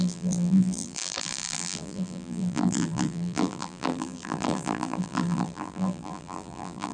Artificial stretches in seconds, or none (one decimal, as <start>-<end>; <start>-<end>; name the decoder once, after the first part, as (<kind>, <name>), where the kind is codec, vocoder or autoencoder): 0.0-6.9 (vocoder, BigVGAN v2)